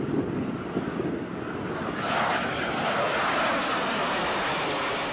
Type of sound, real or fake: real